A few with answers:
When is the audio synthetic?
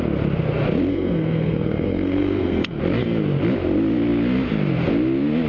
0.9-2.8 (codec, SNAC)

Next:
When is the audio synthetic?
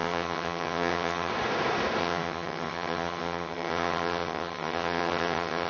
0.0-1.3 (vocoder, HiFi-GAN); 2.0-5.7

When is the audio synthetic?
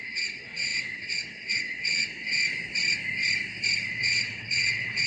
0.0-2.4 (vocoder, WaveNeXt); 3.9-5.1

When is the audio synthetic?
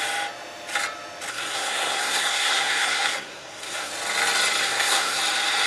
1.3-3.9 (codec, SNAC); 4.6-5.2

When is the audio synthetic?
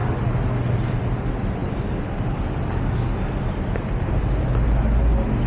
none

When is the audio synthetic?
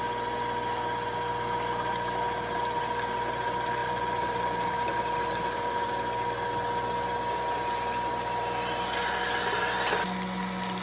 3.8-5.9 (vocoder, BigVGAN v2)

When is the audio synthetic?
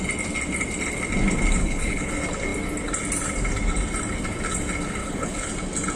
1.6-2.1 (codec, HILCodec); 5.0-5.5